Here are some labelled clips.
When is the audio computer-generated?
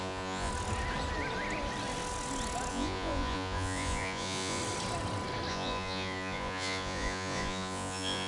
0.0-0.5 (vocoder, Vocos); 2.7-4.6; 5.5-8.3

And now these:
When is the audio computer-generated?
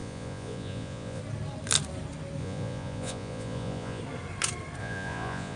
0.0-1.2 (vocoder, Vocos); 2.4-4.0; 4.8-5.6